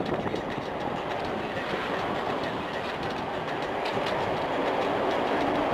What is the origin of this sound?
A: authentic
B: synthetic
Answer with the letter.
A